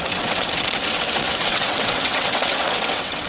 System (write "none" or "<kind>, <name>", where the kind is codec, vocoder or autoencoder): vocoder, WaveNeXt